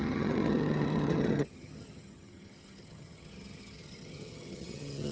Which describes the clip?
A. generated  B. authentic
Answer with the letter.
A